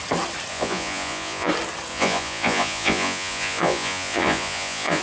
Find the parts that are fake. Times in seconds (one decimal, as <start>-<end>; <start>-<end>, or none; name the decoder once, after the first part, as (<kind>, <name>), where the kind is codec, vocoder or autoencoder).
0.5-1.5 (vocoder, Vocos); 1.9-5.0